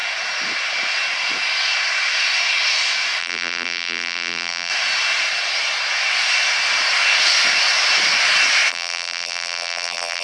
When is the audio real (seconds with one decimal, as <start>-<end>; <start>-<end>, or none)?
0.0-3.2; 4.7-8.7